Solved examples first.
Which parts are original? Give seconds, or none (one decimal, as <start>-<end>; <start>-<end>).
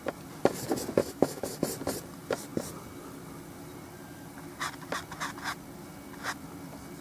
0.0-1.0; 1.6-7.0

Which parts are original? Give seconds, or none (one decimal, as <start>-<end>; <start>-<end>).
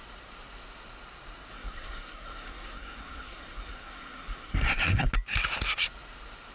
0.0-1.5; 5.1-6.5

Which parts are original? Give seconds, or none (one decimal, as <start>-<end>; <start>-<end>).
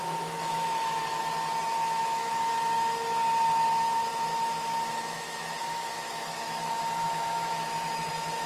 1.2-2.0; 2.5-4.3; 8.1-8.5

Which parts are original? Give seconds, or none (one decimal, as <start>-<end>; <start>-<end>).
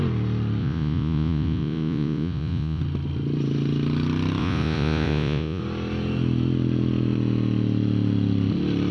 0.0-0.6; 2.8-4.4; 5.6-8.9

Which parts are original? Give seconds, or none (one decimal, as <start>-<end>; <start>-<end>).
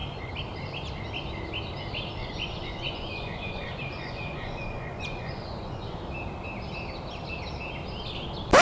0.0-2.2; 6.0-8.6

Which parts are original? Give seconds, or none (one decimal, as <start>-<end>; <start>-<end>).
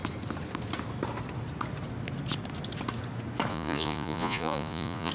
0.0-3.5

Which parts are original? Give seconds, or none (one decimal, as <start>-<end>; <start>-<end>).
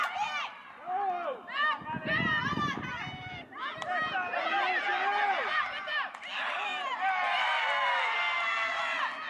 0.0-8.0; 8.8-9.3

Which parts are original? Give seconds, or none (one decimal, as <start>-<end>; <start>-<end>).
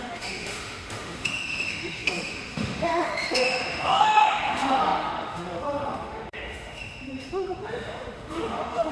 none